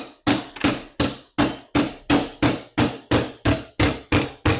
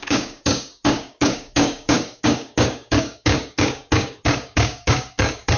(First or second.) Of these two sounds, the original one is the first